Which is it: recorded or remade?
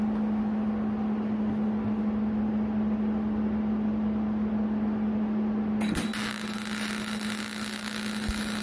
recorded